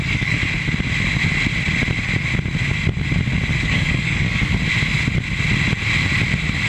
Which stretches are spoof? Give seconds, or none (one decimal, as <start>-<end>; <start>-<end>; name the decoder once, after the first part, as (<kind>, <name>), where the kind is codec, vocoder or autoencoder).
0.0-0.4 (codec, DAC); 3.6-4.5